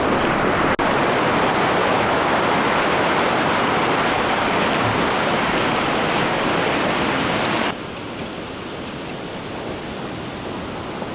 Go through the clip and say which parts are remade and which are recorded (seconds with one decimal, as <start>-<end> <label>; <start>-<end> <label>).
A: 0.0-1.8 recorded; 1.8-2.3 remade; 2.3-11.1 recorded